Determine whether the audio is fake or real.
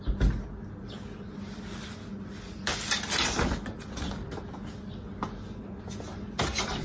real